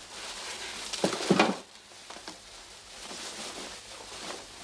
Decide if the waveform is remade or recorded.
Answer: recorded